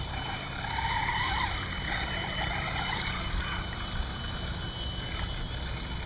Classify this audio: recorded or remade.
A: recorded